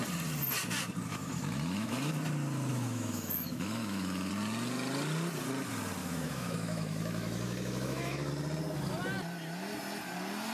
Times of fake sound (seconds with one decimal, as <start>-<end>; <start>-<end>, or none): 1.1-2.1; 2.7-4.3; 6.0-8.3